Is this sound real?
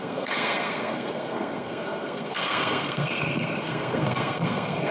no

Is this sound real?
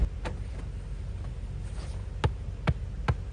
yes